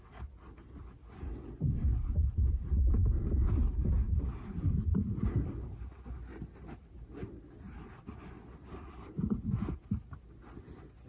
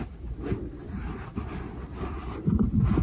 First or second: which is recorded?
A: first